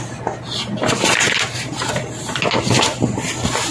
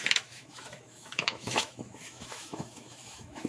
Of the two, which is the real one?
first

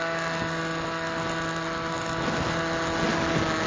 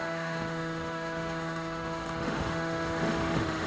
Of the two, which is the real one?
first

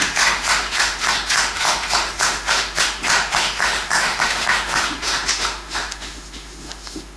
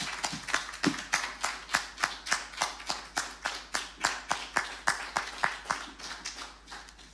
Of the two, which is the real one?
second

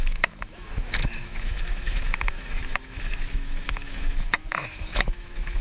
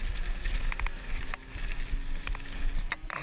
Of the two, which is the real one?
second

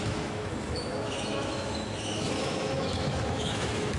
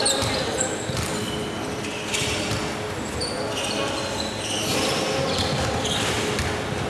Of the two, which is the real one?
second